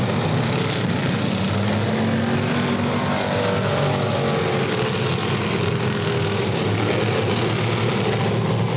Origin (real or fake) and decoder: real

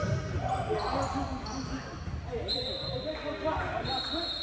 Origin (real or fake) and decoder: real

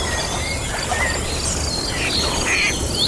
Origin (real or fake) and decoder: real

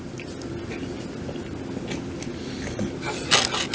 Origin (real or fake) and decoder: real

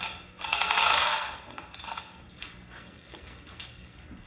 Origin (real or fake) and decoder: fake, codec, SNAC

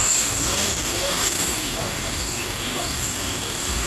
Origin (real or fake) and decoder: fake, codec, DAC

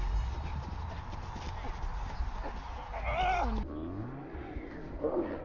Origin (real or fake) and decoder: real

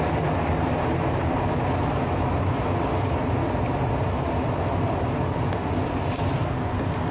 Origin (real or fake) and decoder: real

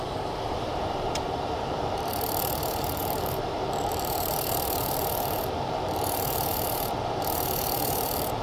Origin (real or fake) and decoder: fake, vocoder, BigVGAN v2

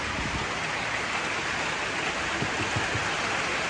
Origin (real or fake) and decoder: real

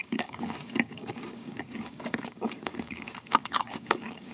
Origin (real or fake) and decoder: fake, codec, DAC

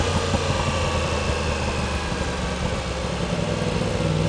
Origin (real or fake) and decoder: real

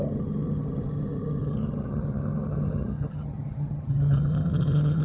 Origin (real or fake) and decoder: fake, vocoder, HiFi-GAN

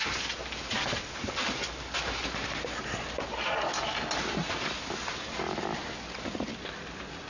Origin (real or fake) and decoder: real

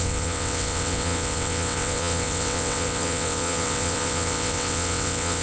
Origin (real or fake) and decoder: fake, vocoder, WaveNeXt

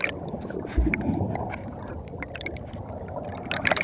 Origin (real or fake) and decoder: fake, vocoder, BigVGAN v2